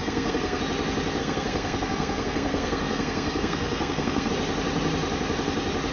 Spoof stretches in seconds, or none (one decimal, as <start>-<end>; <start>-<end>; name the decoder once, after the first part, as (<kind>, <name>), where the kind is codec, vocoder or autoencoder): 0.0-0.6 (codec, SNAC); 1.2-4.3